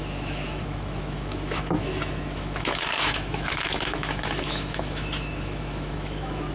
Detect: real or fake fake